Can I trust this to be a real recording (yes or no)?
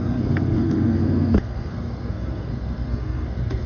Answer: no